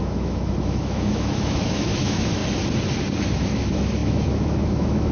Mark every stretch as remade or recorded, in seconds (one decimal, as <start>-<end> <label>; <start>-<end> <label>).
0.0-2.4 remade; 2.4-3.3 recorded; 3.3-5.1 remade